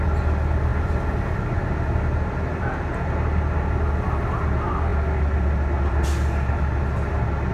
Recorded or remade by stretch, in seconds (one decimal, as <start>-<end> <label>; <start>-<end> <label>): 0.0-7.5 recorded